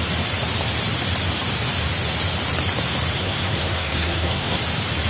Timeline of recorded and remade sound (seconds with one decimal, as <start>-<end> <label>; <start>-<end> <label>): 0.0-3.2 recorded; 3.2-4.6 remade; 4.6-5.1 recorded